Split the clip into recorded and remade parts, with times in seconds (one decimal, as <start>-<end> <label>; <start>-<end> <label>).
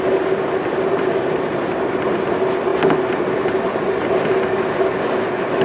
0.0-5.6 recorded